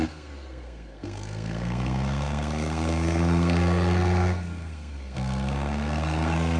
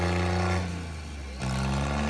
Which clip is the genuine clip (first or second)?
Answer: second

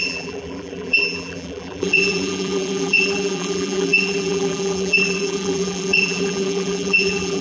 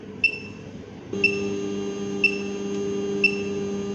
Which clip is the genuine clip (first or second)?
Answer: second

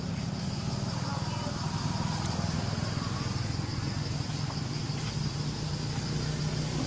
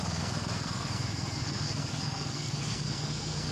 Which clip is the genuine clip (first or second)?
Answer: first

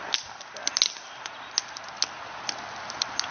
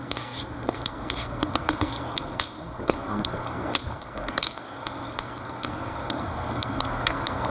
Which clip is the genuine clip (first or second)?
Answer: first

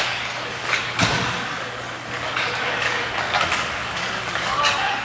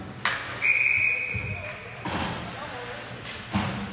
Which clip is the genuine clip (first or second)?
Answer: second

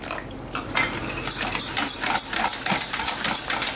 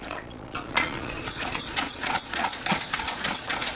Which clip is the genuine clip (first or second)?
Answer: first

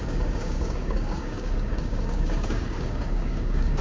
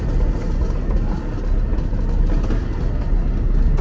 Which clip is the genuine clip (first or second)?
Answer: second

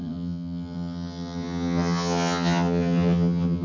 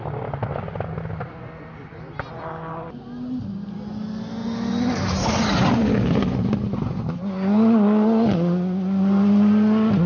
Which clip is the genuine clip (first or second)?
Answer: second